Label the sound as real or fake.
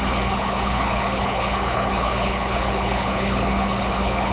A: fake